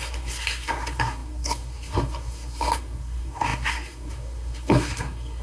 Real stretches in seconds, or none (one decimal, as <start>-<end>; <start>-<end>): none